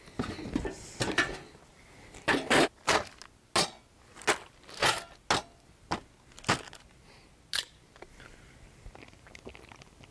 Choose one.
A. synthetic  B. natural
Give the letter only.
B